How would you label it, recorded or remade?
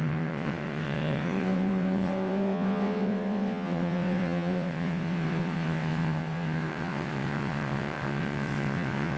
remade